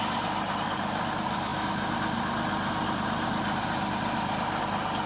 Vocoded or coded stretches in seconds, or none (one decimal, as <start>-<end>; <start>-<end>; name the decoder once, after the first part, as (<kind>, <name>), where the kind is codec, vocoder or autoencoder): none